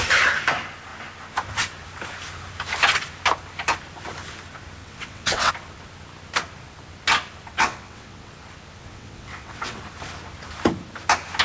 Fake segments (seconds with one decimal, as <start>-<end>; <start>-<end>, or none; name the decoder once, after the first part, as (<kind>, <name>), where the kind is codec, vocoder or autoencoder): 4.8-5.5 (vocoder, WaveNeXt); 7.5-8.3; 8.8-9.8